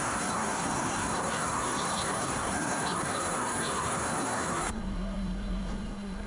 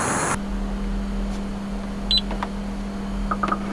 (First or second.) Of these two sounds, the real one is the second